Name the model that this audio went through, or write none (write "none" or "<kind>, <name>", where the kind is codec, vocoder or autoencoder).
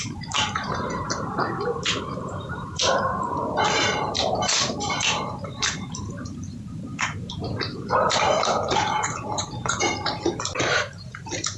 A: vocoder, BigVGAN v2